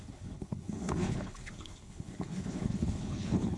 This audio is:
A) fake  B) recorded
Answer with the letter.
A